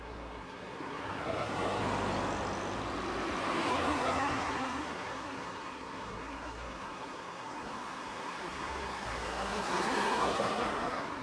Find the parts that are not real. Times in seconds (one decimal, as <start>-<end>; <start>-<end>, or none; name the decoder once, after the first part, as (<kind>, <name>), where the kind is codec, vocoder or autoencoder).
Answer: 0.0-1.8 (codec, SNAC); 3.7-11.2

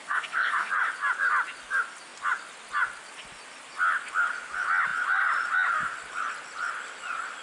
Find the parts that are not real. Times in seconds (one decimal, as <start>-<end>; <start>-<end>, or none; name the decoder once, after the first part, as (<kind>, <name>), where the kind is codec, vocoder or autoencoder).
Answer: 0.0-0.7 (codec, SNAC)

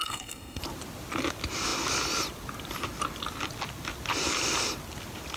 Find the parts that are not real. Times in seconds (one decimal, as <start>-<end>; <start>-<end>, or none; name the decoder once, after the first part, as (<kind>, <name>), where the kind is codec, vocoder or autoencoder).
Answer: 0.0-0.6 (codec, SNAC)

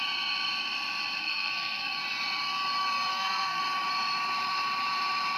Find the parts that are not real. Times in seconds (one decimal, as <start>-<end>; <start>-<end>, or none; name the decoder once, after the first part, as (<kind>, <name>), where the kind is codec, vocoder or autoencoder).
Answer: 1.2-2.0 (codec, SNAC); 3.1-3.6

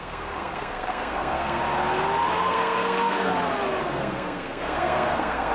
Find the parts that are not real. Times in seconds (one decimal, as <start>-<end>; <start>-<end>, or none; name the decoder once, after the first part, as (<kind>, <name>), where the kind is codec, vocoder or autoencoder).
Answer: 0.0-1.6 (codec, SNAC); 2.4-3.3; 3.8-5.5

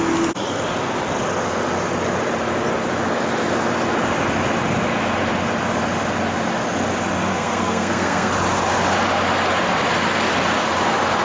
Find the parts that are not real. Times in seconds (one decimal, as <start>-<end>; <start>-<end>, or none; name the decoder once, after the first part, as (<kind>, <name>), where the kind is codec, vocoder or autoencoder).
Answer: 7.3-8.3 (codec, SNAC)

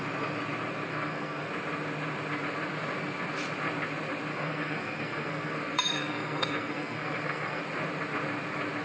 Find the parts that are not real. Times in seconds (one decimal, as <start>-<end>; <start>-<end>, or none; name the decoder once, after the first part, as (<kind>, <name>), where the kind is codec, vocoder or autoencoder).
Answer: 0.9-1.5 (codec, SNAC); 4.3-7.6